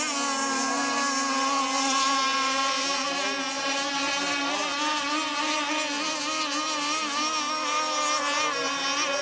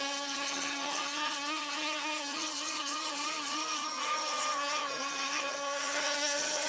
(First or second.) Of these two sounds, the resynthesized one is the second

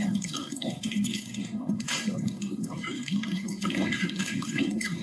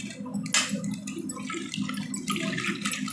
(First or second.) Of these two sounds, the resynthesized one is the first